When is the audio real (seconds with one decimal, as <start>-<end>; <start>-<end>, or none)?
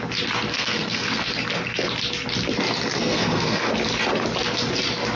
0.0-0.5; 1.3-2.9; 3.7-5.2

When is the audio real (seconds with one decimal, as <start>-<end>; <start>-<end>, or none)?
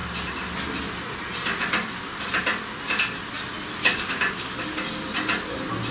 0.0-3.8; 4.5-5.9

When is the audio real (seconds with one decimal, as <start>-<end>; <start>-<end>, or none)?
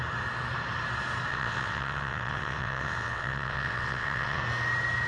0.0-1.3; 4.4-5.1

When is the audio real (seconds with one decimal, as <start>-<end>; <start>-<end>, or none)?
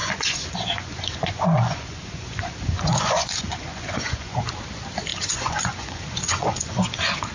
4.4-5.1; 6.8-7.3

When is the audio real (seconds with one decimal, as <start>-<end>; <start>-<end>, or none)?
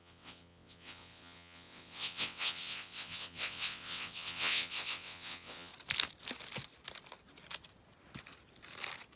5.7-9.2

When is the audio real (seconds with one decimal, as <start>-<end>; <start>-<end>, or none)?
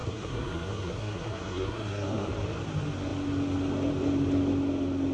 2.3-5.1